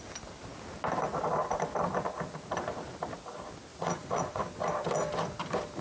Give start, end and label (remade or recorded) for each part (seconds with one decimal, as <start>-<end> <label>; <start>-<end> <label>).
0.0-3.7 recorded; 3.7-4.4 remade; 4.4-5.8 recorded